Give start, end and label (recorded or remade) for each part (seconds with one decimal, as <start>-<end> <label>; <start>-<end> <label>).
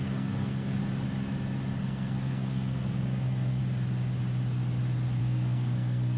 0.0-0.8 remade; 0.8-1.8 recorded; 1.8-3.6 remade; 3.6-5.2 recorded; 5.2-6.2 remade